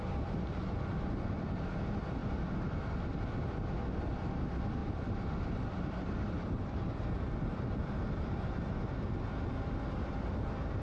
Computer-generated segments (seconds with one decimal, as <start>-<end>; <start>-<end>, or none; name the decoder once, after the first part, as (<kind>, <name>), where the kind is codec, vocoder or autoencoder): 4.8-8.7 (vocoder, BigVGAN v2)